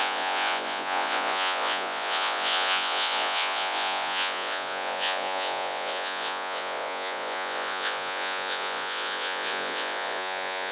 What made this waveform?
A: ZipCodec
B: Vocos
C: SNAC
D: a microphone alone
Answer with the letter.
B